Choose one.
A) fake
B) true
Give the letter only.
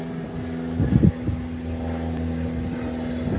B